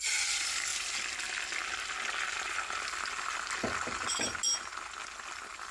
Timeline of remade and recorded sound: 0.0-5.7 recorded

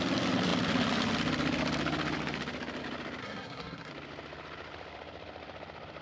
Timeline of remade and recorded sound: 0.0-3.2 recorded; 3.2-3.9 remade; 3.9-6.0 recorded